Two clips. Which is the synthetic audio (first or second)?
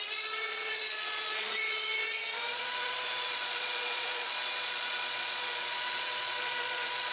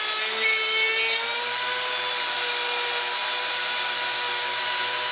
first